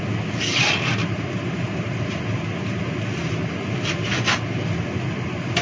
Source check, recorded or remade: recorded